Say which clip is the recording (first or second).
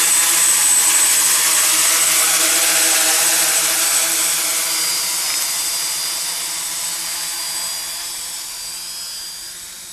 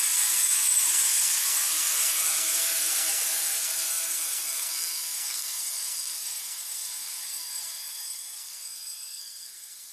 first